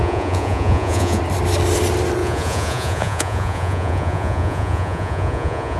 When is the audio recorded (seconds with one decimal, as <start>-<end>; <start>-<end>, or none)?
1.2-2.2